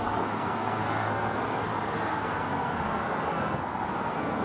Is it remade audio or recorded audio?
remade